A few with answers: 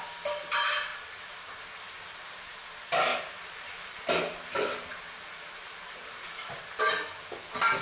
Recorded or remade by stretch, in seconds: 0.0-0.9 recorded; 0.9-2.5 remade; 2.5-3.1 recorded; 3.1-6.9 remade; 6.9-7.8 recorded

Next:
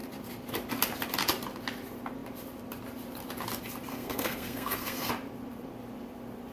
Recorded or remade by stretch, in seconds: 0.0-3.9 recorded; 3.9-5.1 remade; 5.1-6.5 recorded

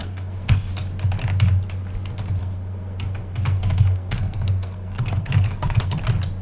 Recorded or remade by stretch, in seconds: 0.0-0.7 remade; 0.7-2.4 recorded; 2.4-6.0 remade; 6.0-6.4 recorded